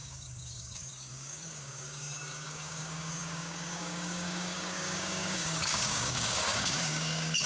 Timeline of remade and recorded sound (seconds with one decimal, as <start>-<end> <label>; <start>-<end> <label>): 0.0-7.5 remade